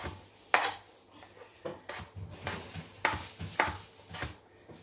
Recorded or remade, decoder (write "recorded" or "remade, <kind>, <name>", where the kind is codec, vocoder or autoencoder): recorded